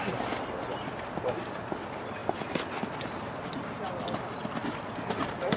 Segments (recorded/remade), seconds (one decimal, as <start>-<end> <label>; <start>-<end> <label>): 0.0-5.6 recorded